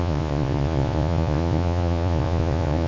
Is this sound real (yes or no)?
no